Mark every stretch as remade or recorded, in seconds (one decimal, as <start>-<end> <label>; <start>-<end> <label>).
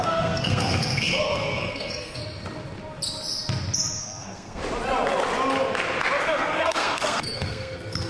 0.0-2.2 remade; 2.2-4.0 recorded; 4.0-4.6 remade; 4.6-6.2 recorded; 6.2-8.1 remade